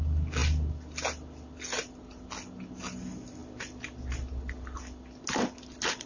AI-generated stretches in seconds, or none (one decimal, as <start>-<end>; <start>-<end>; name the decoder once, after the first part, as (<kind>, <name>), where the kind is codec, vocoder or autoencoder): none